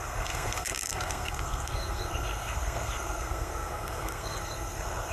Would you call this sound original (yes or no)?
no